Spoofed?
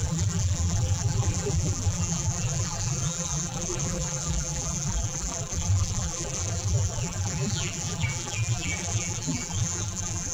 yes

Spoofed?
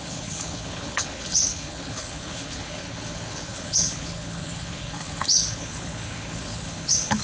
yes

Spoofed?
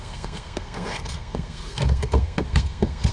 yes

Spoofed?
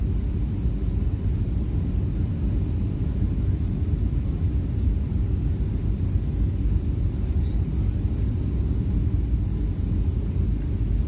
no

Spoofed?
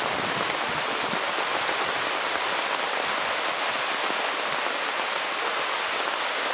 no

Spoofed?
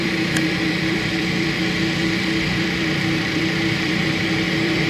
yes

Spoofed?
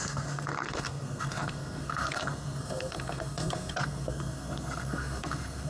yes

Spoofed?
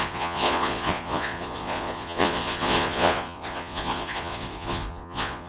yes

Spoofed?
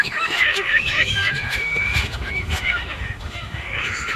yes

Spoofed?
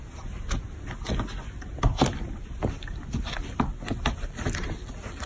no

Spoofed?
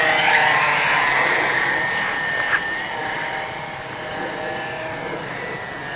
yes